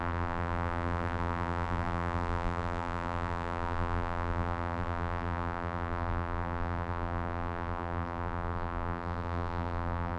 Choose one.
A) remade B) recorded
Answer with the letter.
A